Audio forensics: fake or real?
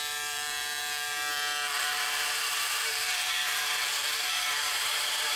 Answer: fake